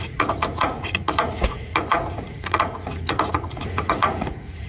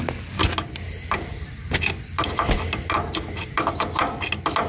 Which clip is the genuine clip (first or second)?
second